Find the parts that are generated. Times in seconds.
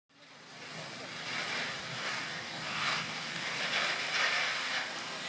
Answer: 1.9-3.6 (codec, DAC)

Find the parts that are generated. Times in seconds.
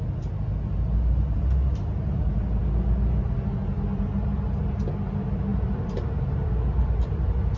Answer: 5.5-7.6 (vocoder, BigVGAN v2)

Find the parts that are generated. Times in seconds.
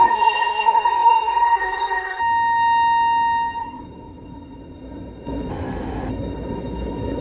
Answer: 0.0-2.2 (codec, SNAC); 3.6-5.5; 6.1-7.2